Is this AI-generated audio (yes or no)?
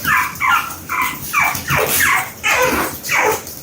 no